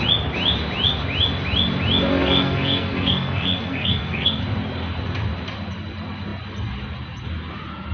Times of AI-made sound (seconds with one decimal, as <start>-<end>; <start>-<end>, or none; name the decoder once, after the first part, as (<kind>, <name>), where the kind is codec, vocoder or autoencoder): 2.1-4.4 (codec, SNAC)